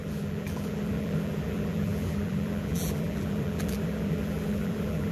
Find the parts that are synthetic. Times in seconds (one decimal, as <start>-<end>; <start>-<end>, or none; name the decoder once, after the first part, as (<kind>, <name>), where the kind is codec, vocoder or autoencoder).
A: 0.0-5.1 (vocoder, BigVGAN v2)

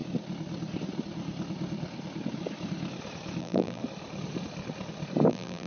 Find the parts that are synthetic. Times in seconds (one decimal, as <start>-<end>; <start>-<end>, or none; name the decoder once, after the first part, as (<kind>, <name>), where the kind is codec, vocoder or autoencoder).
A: 3.4-3.8 (vocoder, BigVGAN v2); 5.3-5.7

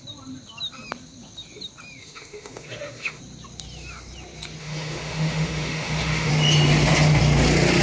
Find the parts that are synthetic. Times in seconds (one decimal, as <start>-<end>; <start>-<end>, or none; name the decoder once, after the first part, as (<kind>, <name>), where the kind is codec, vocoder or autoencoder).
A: 2.0-3.2 (autoencoder, DAC-VAE); 4.6-6.3

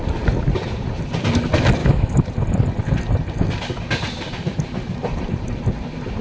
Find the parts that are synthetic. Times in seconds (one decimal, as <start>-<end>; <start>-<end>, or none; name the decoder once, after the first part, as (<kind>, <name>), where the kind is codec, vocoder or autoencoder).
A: 1.8-2.3 (autoencoder, DAC-VAE)

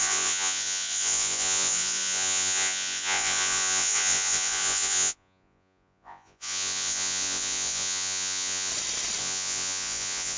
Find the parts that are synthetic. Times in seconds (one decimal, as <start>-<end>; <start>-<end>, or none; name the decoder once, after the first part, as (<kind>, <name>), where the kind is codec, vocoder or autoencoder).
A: 0.0-8.7 (vocoder, Vocos); 9.2-10.4